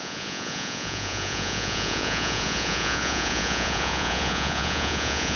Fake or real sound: fake